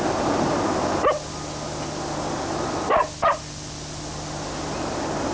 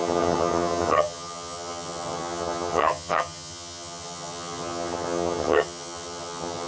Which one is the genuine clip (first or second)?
first